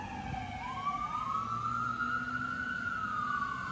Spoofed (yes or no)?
no